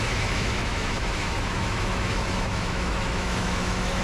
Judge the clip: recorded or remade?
remade